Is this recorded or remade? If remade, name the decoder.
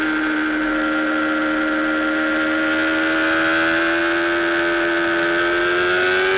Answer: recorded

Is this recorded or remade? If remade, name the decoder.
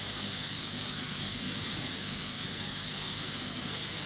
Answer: remade, codec, SNAC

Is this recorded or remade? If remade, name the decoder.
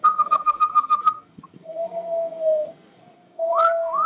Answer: remade, codec, SNAC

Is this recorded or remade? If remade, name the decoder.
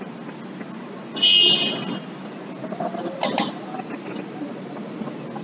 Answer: recorded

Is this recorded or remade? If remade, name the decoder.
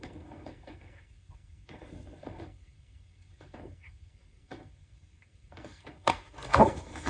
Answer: remade, codec, SNAC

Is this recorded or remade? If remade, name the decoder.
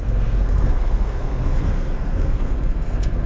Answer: remade, codec, SNAC